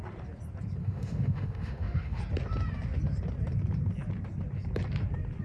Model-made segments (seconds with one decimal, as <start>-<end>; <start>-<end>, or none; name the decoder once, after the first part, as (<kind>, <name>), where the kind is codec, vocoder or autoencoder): 0.8-2.2 (autoencoder, DAC-VAE)